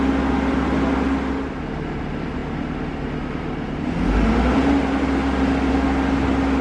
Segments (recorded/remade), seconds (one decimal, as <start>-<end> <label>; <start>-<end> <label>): 0.0-6.6 recorded